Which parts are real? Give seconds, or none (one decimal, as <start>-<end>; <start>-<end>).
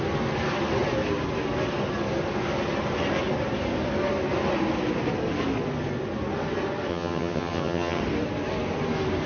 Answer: 0.0-6.9; 8.0-9.3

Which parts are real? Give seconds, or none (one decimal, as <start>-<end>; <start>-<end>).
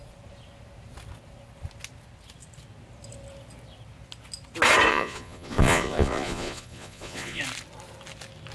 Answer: 0.0-4.9; 7.4-8.5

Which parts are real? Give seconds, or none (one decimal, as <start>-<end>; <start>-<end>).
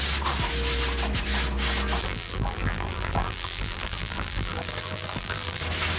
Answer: 0.0-2.0; 5.6-6.0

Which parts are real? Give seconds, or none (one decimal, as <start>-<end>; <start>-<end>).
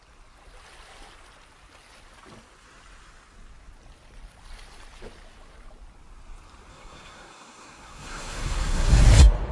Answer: 0.0-6.7; 9.0-9.5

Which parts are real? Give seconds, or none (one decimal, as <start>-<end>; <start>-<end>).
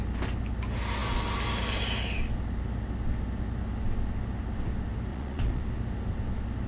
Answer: 0.0-5.1; 5.6-6.7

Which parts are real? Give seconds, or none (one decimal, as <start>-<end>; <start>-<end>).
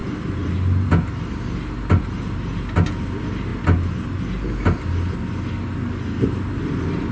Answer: 0.0-7.1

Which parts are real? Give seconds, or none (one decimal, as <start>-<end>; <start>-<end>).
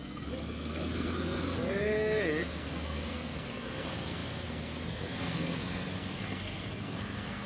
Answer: none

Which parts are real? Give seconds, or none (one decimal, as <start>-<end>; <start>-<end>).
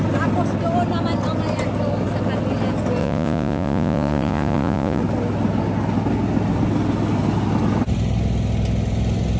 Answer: 0.0-3.0; 5.0-9.4